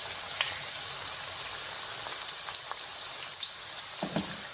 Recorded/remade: recorded